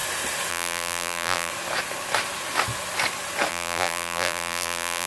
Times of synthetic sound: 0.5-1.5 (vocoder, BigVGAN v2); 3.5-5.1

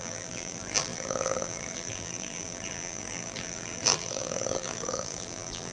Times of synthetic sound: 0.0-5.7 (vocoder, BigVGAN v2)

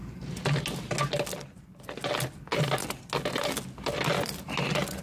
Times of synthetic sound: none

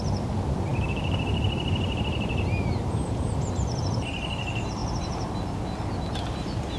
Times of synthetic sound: 0.7-2.0 (vocoder, BigVGAN v2)